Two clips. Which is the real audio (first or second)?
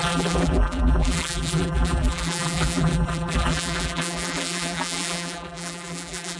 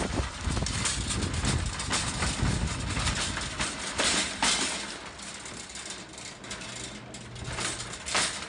second